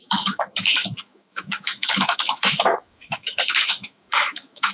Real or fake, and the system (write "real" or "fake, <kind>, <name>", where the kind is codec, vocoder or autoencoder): fake, autoencoder, DAC-VAE